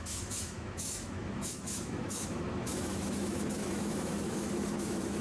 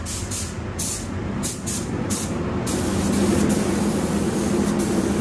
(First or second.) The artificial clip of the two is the first